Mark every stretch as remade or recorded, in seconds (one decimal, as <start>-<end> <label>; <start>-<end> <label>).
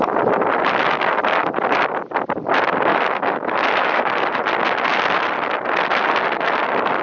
0.0-2.9 recorded; 2.9-4.1 remade; 4.1-7.0 recorded